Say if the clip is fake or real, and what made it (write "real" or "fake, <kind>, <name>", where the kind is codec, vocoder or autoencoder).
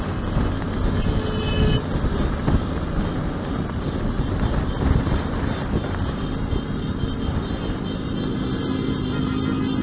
real